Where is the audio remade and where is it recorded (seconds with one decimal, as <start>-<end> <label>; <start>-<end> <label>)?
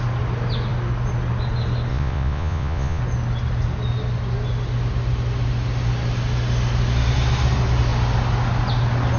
0.0-1.9 recorded; 1.9-3.0 remade; 3.0-9.2 recorded